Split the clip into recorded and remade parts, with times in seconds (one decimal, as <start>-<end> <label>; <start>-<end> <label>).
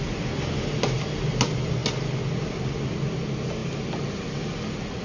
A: 0.0-5.0 recorded